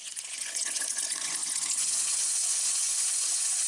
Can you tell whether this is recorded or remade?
remade